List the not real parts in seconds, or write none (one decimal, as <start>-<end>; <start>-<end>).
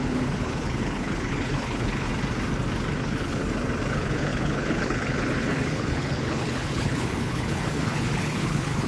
0.0-2.1; 2.9-3.4; 3.9-8.9